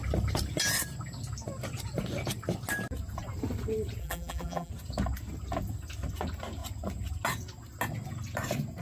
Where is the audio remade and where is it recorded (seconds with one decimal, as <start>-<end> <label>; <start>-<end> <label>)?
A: 0.0-4.0 recorded; 4.0-4.7 remade; 4.7-8.8 recorded